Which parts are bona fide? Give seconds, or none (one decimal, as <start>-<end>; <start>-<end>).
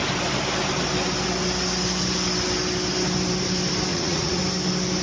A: 0.0-3.9; 4.4-5.0